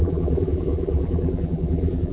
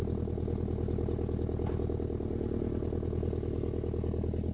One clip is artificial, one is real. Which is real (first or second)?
second